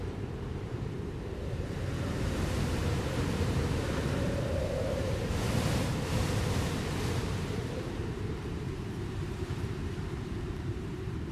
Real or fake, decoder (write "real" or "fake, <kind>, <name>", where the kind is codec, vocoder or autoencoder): fake, vocoder, BigVGAN v2